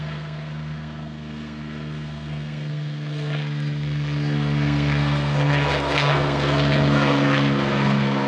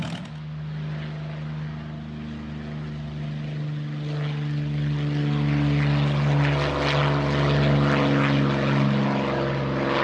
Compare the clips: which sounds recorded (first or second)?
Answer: second